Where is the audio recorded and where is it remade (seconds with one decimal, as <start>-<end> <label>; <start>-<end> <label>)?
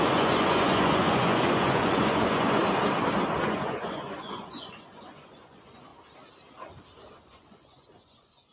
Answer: 0.0-2.6 remade; 2.6-3.4 recorded; 3.4-5.9 remade; 5.9-7.1 recorded; 7.1-8.5 remade